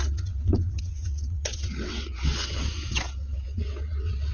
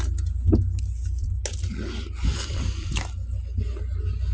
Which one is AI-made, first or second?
first